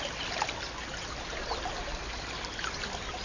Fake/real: real